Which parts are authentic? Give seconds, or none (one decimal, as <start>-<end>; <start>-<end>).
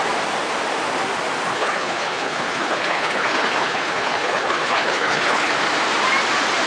0.0-1.5; 5.5-6.7